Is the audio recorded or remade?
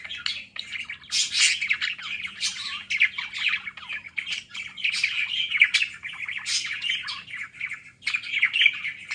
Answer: recorded